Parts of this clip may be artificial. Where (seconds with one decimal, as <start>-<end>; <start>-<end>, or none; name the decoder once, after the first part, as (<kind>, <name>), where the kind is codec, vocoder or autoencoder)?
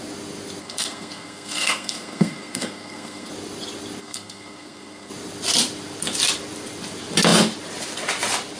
0.6-3.3 (codec, SNAC); 4.0-5.1